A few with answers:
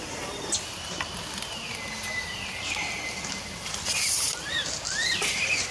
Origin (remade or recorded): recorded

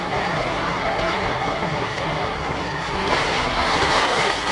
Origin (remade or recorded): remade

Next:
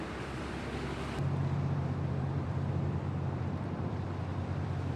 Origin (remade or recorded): remade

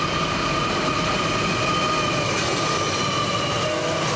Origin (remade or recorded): recorded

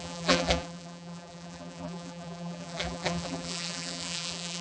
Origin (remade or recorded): remade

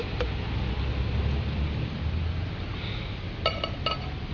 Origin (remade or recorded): recorded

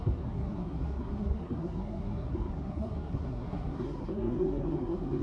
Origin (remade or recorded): remade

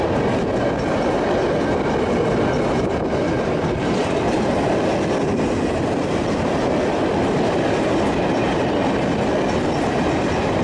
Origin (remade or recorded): recorded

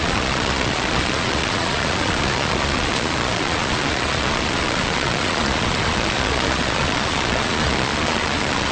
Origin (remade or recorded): remade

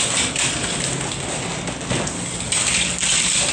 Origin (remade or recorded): recorded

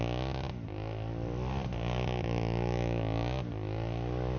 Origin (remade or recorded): recorded